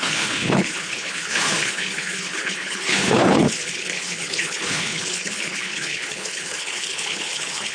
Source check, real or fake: fake